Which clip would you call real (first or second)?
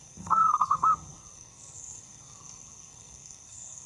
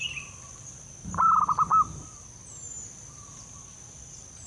second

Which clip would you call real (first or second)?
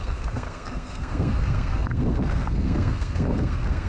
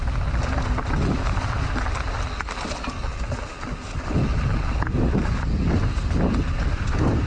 second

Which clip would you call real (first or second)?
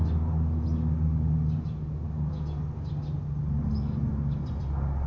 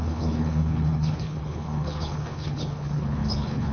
first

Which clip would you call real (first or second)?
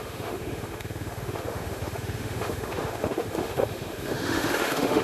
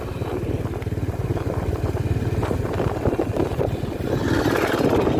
second